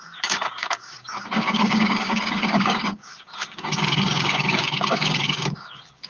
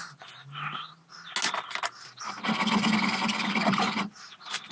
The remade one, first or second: first